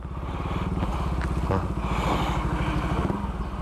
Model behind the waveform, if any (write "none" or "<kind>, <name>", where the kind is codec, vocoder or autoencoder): none